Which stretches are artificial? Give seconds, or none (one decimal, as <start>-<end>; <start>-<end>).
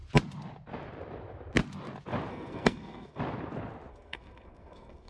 2.3-3.2; 3.9-5.1